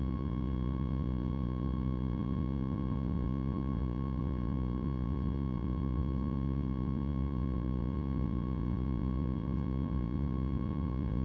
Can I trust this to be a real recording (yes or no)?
no